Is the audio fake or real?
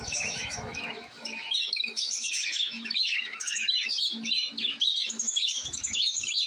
fake